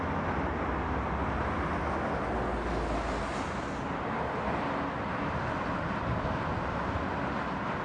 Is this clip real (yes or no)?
yes